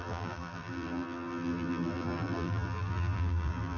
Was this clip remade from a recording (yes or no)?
yes